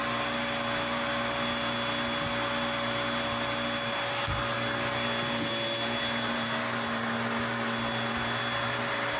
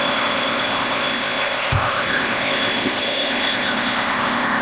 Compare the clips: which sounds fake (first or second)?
second